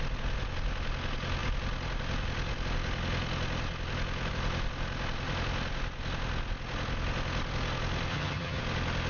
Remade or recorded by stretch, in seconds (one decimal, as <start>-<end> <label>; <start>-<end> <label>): 0.0-8.1 recorded; 8.1-8.6 remade; 8.6-9.1 recorded